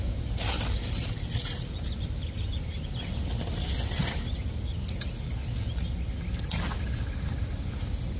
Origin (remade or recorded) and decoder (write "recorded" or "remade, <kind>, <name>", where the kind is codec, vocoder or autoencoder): recorded